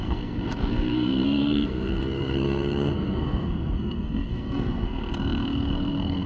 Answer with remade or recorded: remade